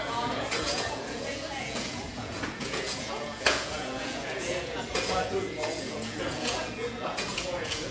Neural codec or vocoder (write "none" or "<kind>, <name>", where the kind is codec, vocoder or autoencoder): vocoder, Vocos